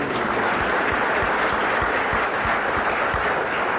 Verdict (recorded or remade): recorded